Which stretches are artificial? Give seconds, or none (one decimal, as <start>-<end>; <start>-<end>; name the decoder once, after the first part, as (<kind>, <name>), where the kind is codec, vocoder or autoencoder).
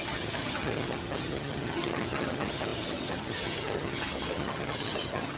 0.0-5.4 (vocoder, HiFi-GAN)